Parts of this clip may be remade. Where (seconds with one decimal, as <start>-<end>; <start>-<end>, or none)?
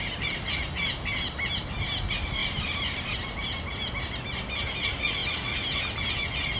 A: 0.0-1.5; 2.4-3.6